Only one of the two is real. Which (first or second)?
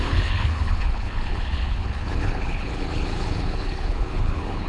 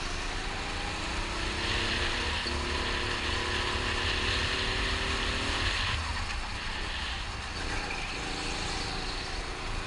second